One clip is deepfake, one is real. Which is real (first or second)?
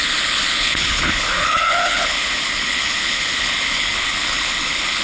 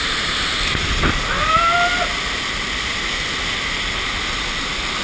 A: second